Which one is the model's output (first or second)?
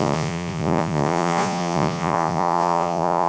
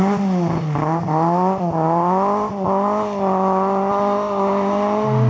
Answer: first